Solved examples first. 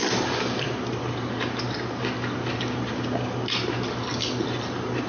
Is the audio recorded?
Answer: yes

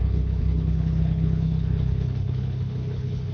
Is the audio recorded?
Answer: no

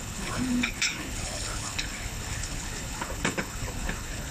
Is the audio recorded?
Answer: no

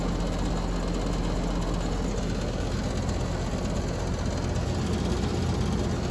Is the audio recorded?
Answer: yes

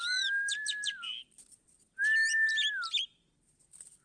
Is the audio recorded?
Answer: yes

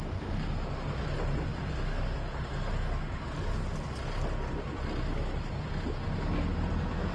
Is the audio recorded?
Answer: yes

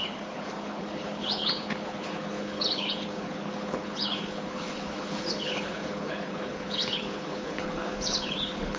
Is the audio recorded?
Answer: no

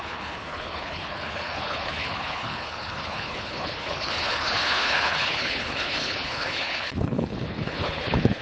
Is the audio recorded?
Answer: no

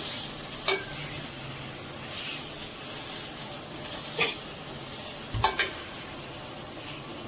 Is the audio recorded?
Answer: yes